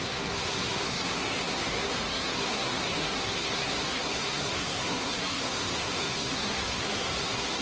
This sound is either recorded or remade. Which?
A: remade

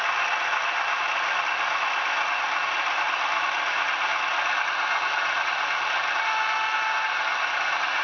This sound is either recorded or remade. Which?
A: recorded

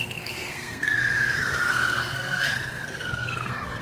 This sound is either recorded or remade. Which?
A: remade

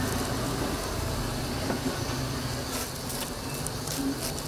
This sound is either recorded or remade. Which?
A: recorded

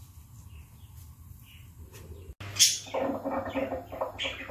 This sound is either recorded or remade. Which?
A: recorded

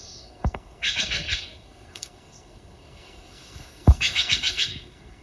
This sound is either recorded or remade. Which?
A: remade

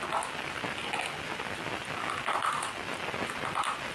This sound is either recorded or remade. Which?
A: recorded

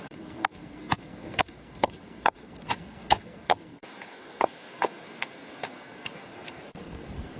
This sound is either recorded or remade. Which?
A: remade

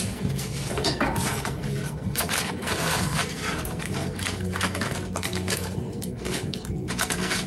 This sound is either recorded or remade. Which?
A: remade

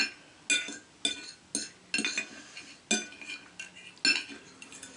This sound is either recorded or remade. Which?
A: recorded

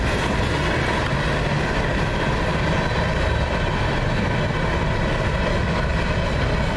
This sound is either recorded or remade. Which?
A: recorded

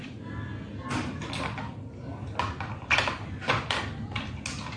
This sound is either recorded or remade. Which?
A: recorded